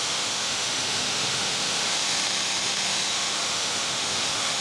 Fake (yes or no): yes